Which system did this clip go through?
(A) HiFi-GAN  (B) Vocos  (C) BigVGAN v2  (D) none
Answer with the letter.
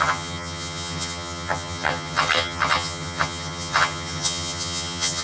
A